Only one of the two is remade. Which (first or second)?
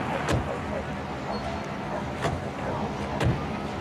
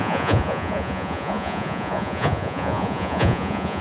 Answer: second